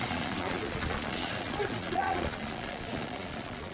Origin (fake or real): fake